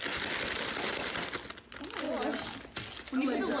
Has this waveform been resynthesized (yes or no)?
no